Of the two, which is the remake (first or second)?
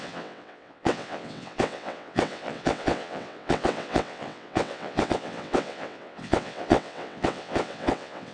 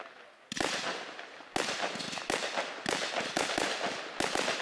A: first